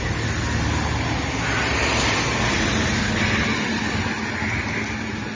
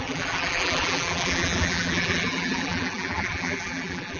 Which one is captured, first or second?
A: first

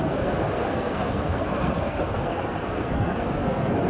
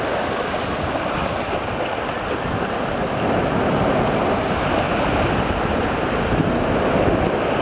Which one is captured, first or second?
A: second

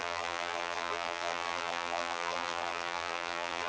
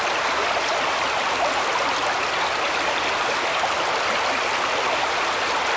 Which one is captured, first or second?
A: second